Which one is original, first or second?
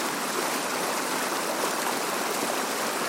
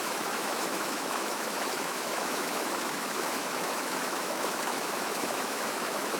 first